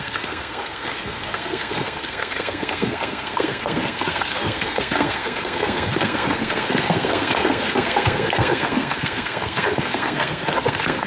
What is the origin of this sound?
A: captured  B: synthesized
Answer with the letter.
B